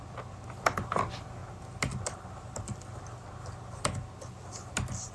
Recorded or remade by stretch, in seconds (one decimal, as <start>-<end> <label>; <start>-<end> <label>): 0.0-5.1 recorded